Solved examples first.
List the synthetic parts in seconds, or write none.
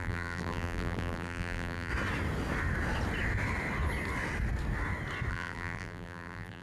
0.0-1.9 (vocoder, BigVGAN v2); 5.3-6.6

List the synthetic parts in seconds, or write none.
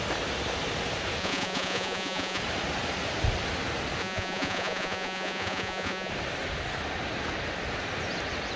1.2-2.4 (vocoder, Vocos); 4.0-6.1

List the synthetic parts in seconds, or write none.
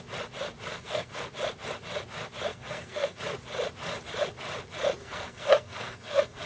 0.7-1.2 (codec, SNAC); 2.5-3.2; 5.0-6.5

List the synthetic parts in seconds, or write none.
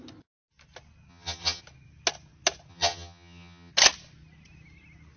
1.1-1.6 (vocoder, HiFi-GAN); 2.7-3.7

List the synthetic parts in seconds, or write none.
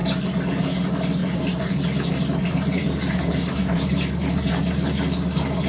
1.2-4.6 (vocoder, BigVGAN v2)